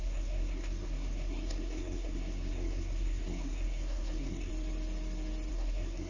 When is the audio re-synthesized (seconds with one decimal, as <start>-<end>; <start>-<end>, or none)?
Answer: 0.0-4.5; 5.5-6.1